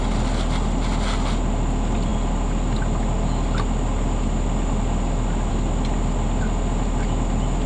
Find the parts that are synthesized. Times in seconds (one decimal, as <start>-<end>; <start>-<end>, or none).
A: none